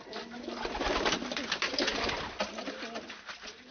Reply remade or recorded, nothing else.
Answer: remade